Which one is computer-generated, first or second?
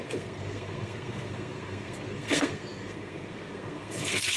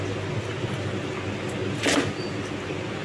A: first